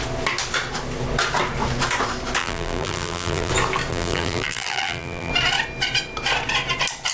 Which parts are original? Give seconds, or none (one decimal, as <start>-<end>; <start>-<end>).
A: 0.0-2.4; 3.5-3.9; 5.3-7.1